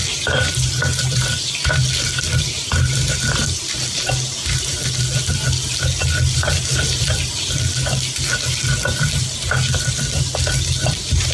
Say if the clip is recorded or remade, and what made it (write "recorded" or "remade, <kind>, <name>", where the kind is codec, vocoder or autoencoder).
recorded